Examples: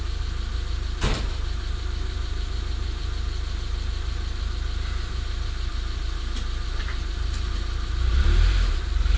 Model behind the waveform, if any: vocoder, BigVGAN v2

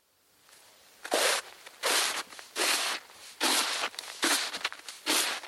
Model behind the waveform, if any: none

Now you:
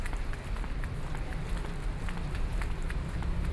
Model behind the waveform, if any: none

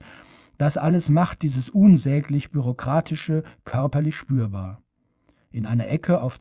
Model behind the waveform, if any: vocoder, BigVGAN v2